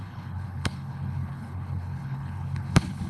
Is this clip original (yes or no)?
no